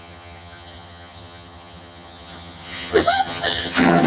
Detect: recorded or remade remade